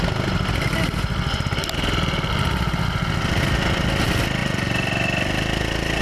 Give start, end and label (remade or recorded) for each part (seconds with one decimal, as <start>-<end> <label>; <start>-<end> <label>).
0.0-4.4 recorded; 4.4-5.6 remade; 5.6-6.0 recorded